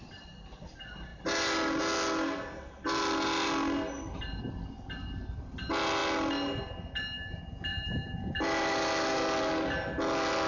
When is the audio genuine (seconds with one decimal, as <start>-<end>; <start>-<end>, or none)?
0.0-1.1; 1.8-7.7; 9.2-10.5

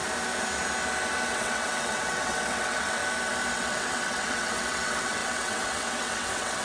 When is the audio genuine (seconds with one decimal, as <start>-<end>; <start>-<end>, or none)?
0.0-1.3; 3.0-3.5

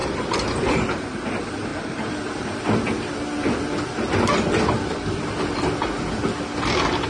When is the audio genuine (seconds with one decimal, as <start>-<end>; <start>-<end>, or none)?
0.7-1.7; 2.6-7.1

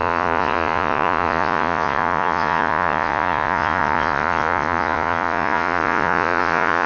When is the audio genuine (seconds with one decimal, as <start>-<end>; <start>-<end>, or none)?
none

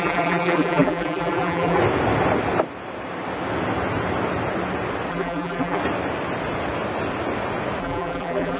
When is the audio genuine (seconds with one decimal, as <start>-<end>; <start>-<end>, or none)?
1.8-5.1; 5.8-7.8

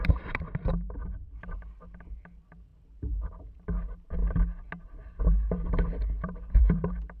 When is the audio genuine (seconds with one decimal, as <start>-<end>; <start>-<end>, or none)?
4.2-4.8

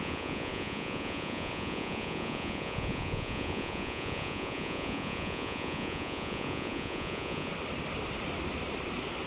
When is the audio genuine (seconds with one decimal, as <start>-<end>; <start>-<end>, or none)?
7.5-9.3

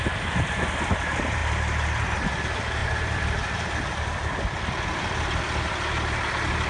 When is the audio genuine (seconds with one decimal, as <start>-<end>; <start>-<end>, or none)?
0.0-2.8; 5.4-6.7